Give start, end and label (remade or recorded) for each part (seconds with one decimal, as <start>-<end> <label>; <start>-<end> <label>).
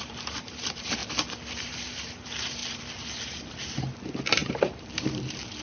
0.0-1.0 remade; 1.0-1.6 recorded; 1.6-2.6 remade; 2.6-3.5 recorded; 3.5-5.6 remade